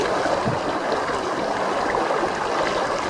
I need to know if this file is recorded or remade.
recorded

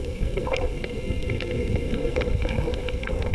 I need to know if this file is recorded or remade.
remade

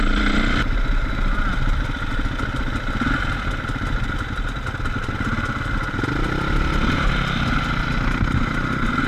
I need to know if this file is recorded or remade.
recorded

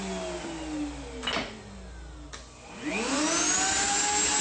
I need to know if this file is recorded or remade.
recorded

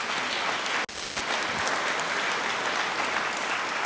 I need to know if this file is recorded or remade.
recorded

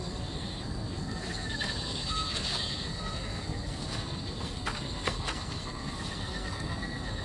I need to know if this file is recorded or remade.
remade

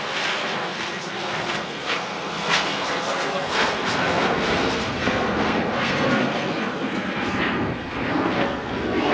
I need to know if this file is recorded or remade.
remade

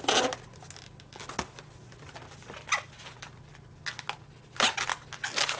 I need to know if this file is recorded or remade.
recorded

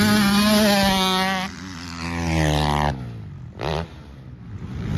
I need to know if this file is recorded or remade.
recorded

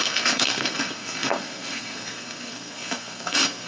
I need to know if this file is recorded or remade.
remade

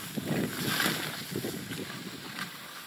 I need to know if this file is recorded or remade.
recorded